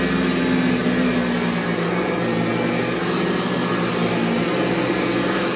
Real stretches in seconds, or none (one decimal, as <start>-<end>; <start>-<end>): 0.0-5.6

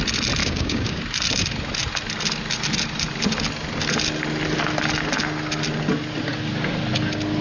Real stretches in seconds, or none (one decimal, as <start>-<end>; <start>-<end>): 0.0-0.4; 1.0-7.4

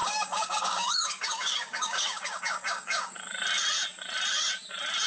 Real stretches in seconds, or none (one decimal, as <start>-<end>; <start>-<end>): 3.1-5.1